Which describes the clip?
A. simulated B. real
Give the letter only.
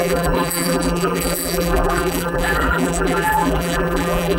A